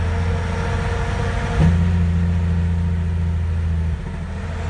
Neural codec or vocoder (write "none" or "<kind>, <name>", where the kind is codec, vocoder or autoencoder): none